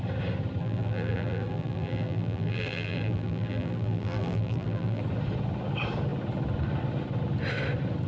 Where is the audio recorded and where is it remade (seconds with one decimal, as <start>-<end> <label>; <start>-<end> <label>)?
0.0-0.6 recorded; 0.6-5.0 remade; 5.0-8.1 recorded